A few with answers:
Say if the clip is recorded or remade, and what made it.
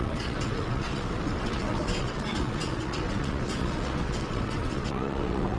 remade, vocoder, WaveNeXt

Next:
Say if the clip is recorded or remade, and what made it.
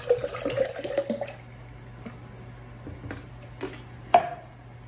recorded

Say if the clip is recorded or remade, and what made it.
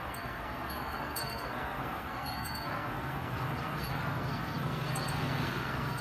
remade, codec, SNAC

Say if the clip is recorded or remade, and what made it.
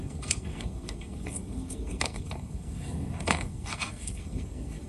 remade, codec, SNAC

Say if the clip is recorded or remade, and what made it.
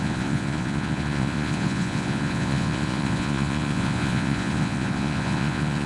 remade, vocoder, Vocos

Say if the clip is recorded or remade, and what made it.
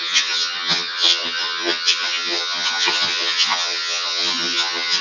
remade, vocoder, HiFi-GAN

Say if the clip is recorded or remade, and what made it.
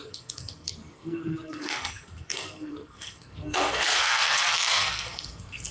remade, codec, SNAC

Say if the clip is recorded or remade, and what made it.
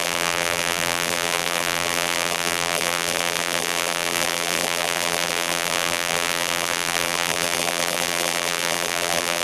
remade, vocoder, BigVGAN v2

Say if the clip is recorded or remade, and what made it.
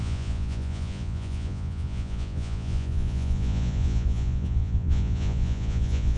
remade, vocoder, Vocos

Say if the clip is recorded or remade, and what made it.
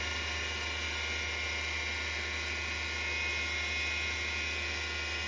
recorded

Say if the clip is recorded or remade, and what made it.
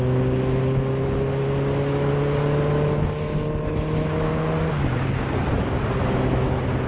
recorded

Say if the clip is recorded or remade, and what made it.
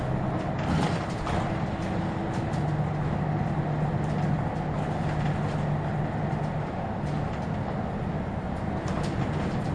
recorded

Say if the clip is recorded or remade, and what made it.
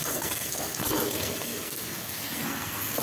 remade, codec, SNAC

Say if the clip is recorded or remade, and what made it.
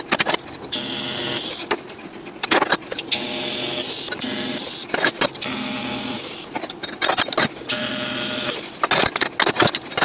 recorded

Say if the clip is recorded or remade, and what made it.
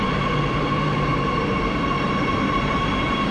remade, vocoder, BigVGAN v2